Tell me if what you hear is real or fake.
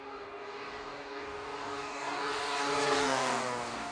fake